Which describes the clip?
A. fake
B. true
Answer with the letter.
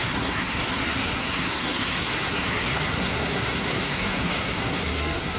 A